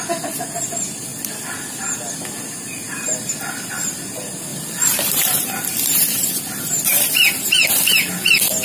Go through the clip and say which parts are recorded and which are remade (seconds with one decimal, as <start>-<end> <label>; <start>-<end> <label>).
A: 0.0-4.5 recorded; 4.5-7.7 remade; 7.7-8.6 recorded